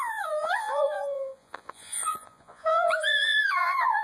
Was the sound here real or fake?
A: fake